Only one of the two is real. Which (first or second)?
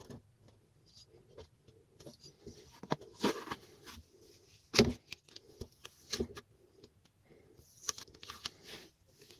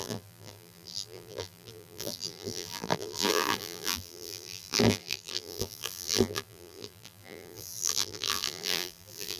first